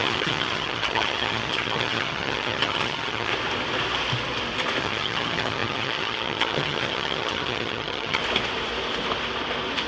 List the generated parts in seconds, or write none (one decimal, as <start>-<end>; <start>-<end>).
0.0-3.3; 4.8-8.2